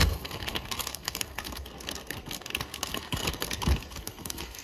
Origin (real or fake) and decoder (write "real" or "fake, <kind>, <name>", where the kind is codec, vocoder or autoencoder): fake, codec, SNAC